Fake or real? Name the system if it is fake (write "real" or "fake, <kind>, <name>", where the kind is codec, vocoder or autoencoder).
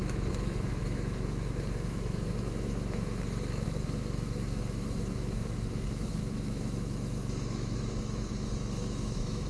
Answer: fake, autoencoder, DAC-VAE